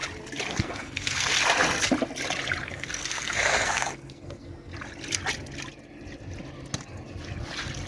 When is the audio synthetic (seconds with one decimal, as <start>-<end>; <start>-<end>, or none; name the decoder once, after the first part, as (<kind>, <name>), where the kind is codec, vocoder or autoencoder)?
0.5-1.3 (codec, SNAC); 2.6-4.7